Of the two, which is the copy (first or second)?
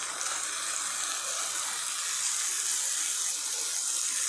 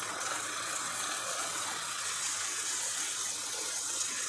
second